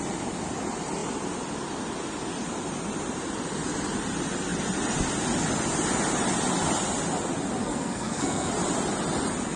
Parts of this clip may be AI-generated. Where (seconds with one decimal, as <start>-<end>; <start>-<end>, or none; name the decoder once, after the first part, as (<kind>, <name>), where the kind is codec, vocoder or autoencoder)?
7.6-8.5 (codec, SNAC)